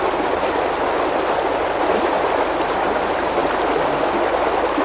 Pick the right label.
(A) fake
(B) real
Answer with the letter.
B